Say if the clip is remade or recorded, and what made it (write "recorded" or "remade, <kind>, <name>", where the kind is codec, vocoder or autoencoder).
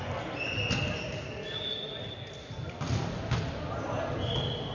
recorded